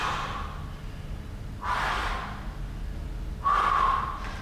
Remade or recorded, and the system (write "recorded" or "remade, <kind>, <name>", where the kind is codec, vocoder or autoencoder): recorded